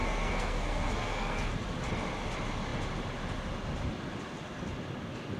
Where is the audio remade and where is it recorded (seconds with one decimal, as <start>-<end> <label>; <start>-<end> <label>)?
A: 0.0-1.5 remade; 1.5-5.4 recorded